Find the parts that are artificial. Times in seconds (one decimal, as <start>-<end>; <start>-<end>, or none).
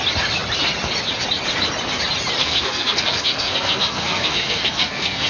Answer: 2.4-5.3